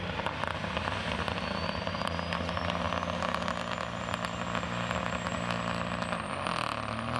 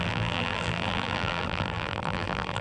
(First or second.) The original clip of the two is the first